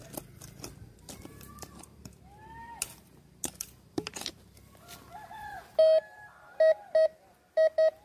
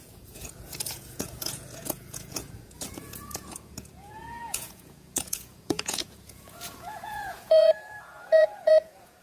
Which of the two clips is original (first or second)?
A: first